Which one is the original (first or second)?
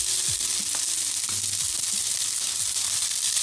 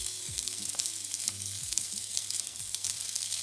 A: first